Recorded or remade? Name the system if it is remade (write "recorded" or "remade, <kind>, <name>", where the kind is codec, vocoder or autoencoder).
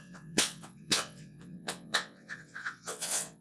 remade, vocoder, WaveNeXt